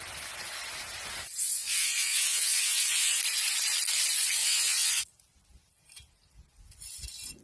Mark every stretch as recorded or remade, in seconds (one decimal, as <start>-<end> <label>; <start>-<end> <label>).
0.0-1.4 recorded; 1.4-3.2 remade; 3.2-4.4 recorded; 4.4-5.0 remade; 5.0-7.4 recorded